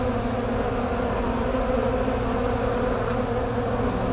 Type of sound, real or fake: real